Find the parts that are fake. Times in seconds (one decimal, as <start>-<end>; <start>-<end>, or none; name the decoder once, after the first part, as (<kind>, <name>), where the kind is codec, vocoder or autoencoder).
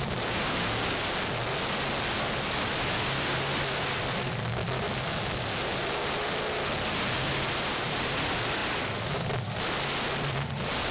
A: none